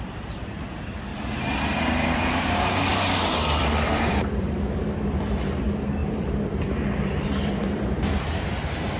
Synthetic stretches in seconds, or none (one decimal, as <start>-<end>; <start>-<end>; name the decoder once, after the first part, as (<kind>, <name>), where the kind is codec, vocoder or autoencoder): 0.0-1.1 (vocoder, BigVGAN v2); 1.8-2.9; 3.6-9.0